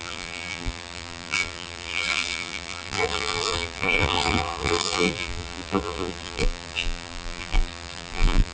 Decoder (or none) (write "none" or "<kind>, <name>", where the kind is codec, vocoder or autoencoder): vocoder, BigVGAN v2